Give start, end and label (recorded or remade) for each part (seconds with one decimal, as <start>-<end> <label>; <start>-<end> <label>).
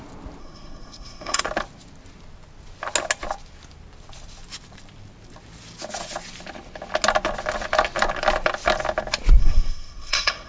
0.0-0.4 recorded; 0.4-1.4 remade; 1.4-9.4 recorded; 9.4-10.5 remade